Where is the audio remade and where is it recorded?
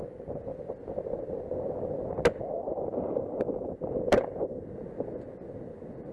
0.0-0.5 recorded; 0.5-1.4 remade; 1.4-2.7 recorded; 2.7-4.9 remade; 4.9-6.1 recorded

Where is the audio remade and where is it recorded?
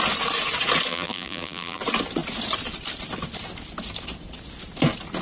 0.0-0.9 recorded; 0.9-1.8 remade; 1.8-5.2 recorded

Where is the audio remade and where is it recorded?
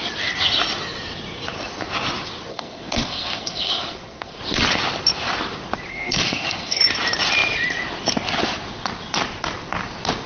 0.0-2.5 recorded; 2.5-4.4 remade; 4.4-5.9 recorded; 5.9-6.8 remade; 6.8-10.3 recorded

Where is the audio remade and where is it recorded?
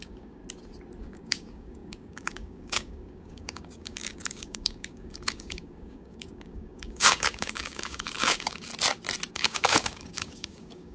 0.0-0.4 remade; 0.4-1.0 recorded; 1.0-8.7 remade; 8.7-9.3 recorded; 9.3-10.9 remade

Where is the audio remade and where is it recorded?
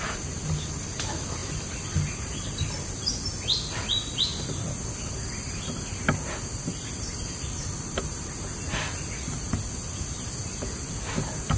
0.0-11.6 recorded